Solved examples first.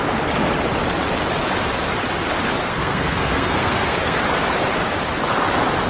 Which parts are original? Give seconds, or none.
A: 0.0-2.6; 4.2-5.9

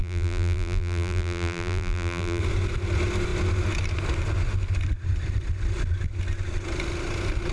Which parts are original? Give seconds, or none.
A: 2.4-7.5

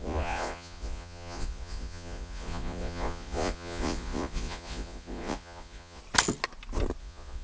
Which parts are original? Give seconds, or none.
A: 6.0-7.0